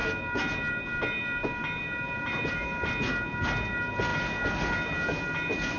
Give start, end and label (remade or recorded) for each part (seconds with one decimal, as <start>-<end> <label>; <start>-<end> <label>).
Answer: 0.0-5.8 recorded